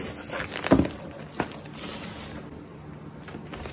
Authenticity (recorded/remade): recorded